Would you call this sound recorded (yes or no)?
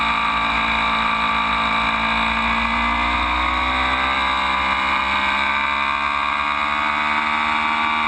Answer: yes